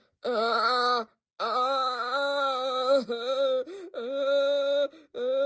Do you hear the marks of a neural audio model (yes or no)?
no